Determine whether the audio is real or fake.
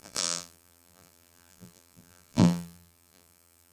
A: fake